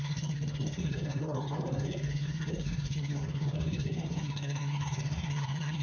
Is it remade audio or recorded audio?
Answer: remade